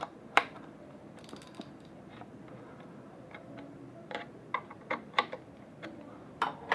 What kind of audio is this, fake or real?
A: fake